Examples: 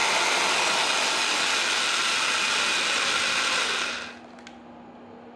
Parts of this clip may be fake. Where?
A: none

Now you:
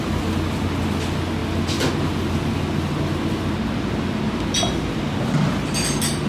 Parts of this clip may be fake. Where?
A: none